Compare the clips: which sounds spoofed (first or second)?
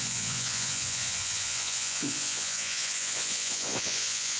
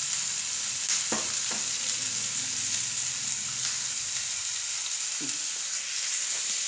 first